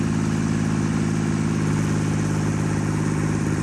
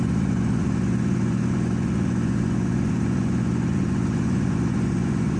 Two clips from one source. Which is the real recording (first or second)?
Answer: first